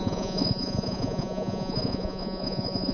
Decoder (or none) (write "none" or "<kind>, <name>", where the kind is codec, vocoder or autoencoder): vocoder, Vocos